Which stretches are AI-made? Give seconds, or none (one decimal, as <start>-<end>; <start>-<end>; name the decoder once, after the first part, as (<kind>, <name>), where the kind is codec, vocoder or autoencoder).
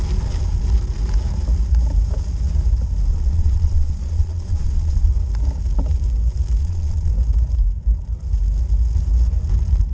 3.1-5.1 (vocoder, Vocos); 6.6-7.1